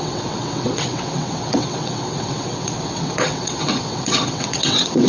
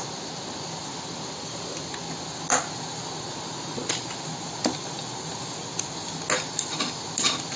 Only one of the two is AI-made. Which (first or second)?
first